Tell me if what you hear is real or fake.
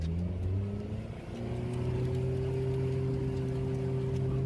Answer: real